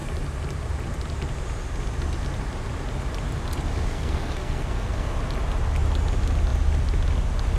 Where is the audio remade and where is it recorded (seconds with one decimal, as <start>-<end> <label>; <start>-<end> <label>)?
0.0-3.9 recorded; 3.9-5.1 remade; 5.1-7.6 recorded